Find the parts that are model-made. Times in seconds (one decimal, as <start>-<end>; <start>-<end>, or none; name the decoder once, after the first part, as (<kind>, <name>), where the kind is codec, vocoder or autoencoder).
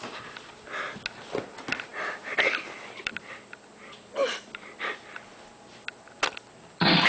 none